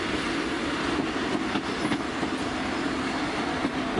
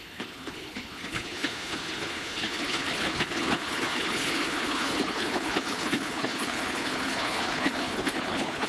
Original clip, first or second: first